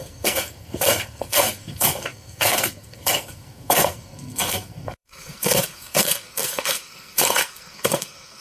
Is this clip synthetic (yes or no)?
yes